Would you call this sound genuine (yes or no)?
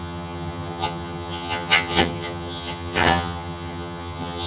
no